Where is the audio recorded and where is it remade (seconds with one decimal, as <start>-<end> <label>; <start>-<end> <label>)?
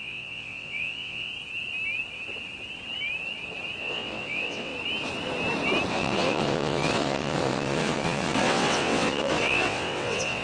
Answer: 0.0-1.3 remade; 1.3-3.8 recorded; 3.8-4.7 remade; 4.7-5.9 recorded; 5.9-10.4 remade